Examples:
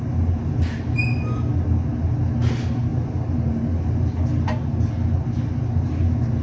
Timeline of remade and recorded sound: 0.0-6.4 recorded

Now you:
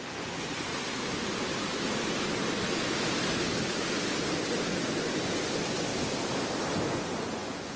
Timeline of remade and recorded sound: 0.0-0.7 remade; 0.7-4.4 recorded; 4.4-5.9 remade; 5.9-6.9 recorded; 6.9-7.8 remade